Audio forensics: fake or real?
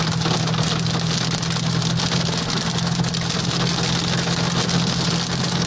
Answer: real